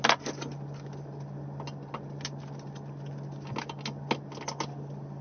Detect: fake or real real